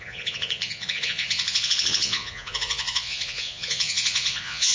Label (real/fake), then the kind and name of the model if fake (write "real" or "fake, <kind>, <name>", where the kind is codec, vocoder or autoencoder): fake, vocoder, Vocos